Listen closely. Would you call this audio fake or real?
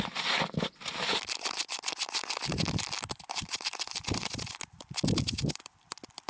fake